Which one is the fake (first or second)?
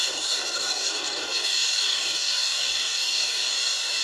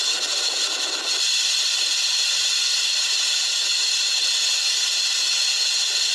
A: first